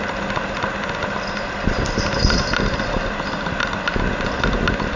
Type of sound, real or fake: real